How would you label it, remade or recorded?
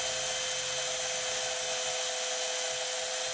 recorded